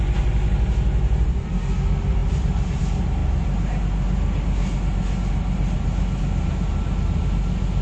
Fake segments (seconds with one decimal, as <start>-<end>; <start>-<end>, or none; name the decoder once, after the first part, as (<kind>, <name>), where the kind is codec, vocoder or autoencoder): none